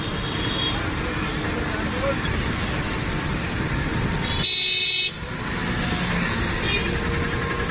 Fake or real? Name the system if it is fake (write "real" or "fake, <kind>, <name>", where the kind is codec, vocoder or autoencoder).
real